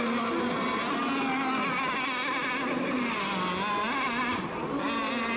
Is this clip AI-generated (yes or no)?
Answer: no